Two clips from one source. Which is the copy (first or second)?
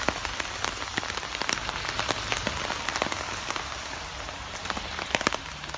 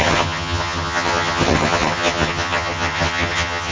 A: second